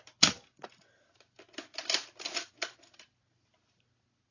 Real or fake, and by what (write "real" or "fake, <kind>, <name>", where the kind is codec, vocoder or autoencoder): real